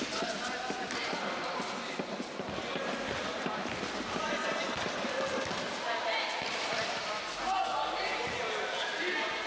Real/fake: real